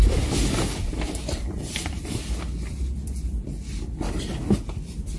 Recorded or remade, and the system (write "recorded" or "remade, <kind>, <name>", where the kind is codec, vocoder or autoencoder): remade, vocoder, BigVGAN v2